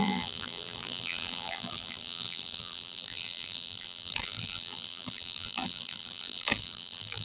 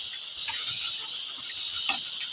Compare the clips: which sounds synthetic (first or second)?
first